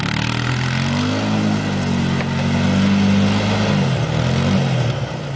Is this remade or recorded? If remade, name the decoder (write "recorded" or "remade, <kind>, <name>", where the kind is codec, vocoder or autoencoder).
recorded